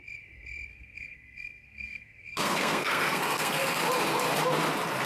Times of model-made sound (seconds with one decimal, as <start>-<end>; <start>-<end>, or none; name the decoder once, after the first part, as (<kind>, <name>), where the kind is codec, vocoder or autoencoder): 0.7-3.8 (codec, SNAC)